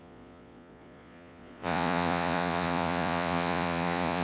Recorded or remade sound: remade